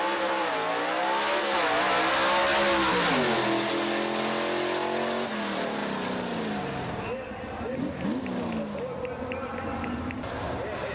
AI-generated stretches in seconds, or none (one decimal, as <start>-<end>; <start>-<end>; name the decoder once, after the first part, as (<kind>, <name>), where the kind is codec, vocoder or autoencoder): none